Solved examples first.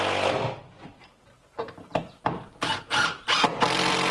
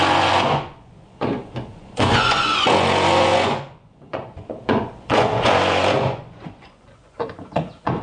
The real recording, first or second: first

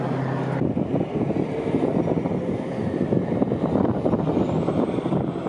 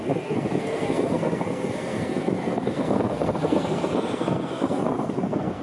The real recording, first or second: first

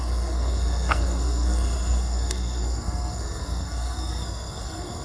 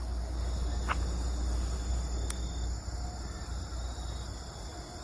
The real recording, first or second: second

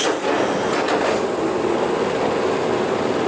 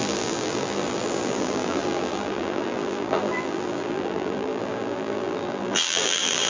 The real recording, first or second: first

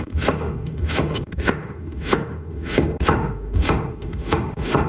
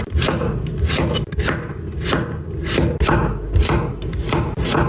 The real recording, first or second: second